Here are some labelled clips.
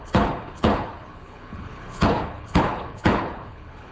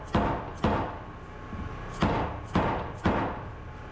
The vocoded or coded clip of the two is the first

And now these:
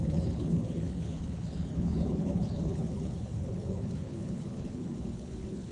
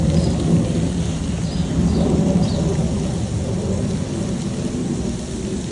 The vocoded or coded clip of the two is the first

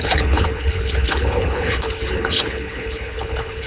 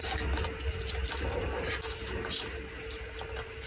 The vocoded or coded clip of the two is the first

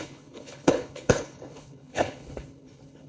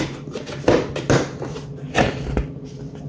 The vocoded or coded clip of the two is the first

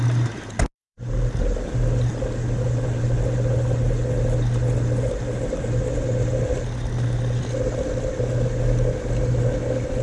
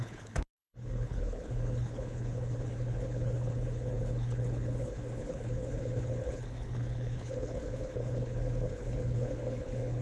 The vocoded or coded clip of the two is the second